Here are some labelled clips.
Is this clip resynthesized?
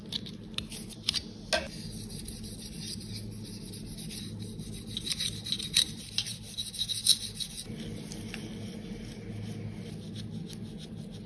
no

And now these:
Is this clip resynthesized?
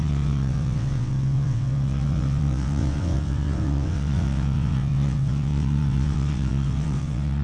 yes